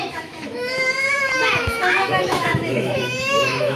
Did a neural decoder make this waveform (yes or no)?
yes